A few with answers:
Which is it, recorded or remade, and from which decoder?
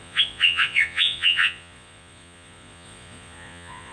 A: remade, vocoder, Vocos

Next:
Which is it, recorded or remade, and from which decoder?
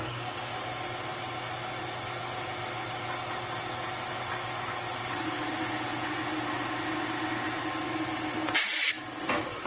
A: recorded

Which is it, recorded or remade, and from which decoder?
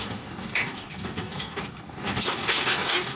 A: remade, codec, DAC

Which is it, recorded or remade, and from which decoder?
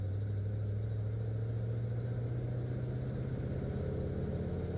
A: recorded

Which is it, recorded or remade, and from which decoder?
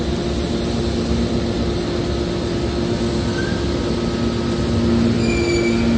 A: recorded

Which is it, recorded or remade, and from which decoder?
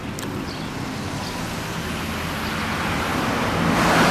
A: recorded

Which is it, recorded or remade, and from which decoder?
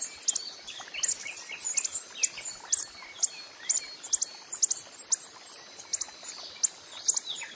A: recorded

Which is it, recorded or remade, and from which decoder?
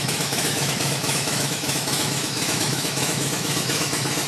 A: remade, autoencoder, DAC-VAE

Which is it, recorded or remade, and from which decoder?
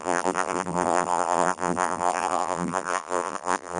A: remade, vocoder, BigVGAN v2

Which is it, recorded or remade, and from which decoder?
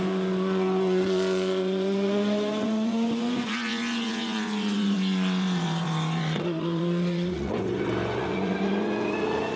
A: remade, vocoder, Vocos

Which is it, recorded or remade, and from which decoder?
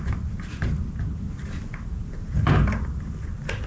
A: recorded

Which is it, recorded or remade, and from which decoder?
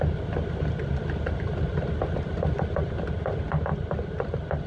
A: recorded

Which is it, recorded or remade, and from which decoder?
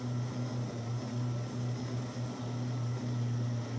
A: recorded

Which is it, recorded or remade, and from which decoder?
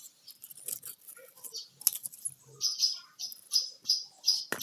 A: recorded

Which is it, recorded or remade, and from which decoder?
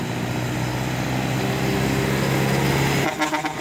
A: recorded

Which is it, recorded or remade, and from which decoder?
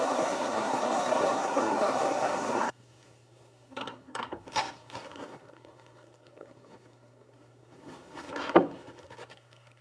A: remade, codec, SNAC